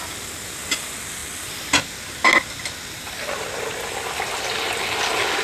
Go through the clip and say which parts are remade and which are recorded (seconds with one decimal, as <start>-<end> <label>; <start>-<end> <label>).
0.0-1.2 recorded; 1.2-4.4 remade; 4.4-5.4 recorded